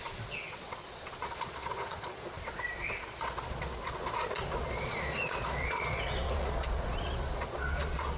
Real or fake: fake